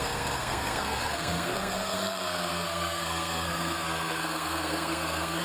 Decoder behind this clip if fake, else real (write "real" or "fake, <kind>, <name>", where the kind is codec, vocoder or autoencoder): fake, codec, SNAC